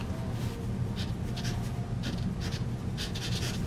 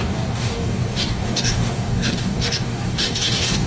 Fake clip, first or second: second